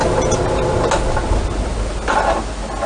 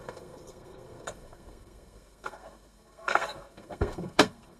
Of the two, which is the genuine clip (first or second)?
first